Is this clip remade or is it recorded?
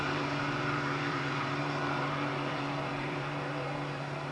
remade